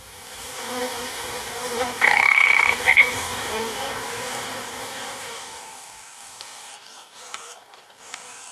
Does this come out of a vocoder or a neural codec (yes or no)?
yes